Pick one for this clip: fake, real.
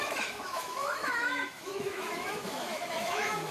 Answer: fake